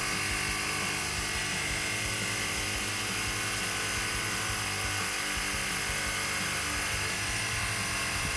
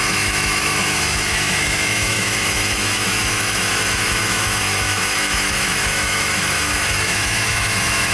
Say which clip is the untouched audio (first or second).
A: first